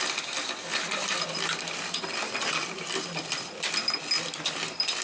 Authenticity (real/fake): real